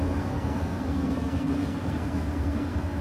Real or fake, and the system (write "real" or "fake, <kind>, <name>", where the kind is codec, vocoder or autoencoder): fake, codec, SNAC